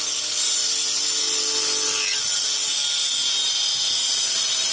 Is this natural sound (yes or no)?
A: yes